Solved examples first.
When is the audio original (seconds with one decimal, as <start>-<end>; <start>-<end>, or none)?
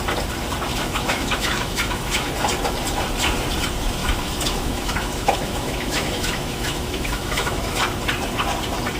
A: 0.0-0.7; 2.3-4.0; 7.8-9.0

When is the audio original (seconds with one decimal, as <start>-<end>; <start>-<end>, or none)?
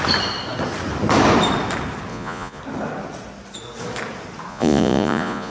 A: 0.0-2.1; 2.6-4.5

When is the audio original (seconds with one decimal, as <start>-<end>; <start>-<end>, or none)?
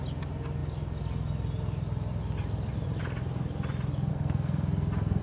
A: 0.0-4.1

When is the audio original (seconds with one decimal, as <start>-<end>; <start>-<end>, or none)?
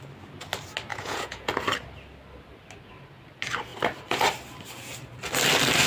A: 0.0-0.9; 1.5-5.9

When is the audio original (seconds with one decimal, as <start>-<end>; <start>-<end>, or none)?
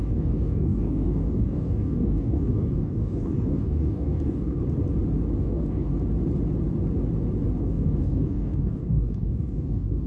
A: 4.6-5.4; 5.9-7.6